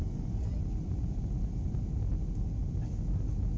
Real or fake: real